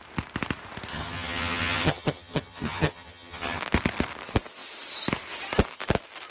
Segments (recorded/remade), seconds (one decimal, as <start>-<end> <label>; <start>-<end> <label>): 0.0-0.9 recorded; 0.9-3.6 remade; 3.6-6.3 recorded